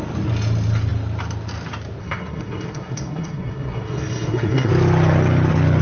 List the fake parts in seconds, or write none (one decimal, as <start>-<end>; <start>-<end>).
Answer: 2.0-4.7